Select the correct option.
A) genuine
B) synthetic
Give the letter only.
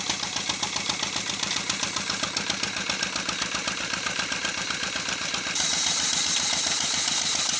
A